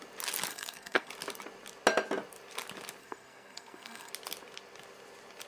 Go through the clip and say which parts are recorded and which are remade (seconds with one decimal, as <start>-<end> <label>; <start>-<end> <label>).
0.0-0.5 recorded; 0.5-1.1 remade; 1.1-3.0 recorded; 3.0-4.1 remade; 4.1-5.5 recorded